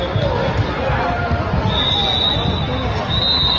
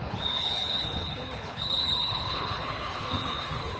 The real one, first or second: first